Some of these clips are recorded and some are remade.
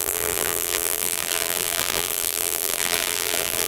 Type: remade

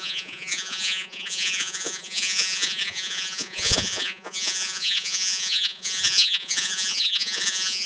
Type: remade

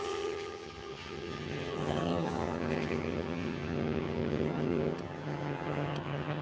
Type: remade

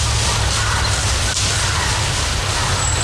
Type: recorded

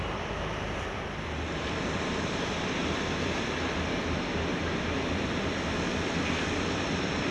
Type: remade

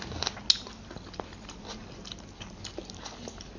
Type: recorded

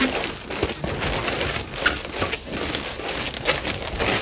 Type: recorded